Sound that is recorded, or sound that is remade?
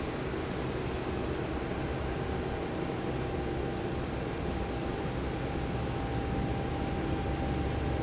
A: recorded